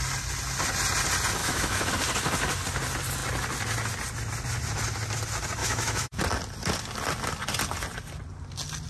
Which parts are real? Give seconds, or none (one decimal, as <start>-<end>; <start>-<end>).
0.0-1.4; 1.9-5.6; 6.2-8.9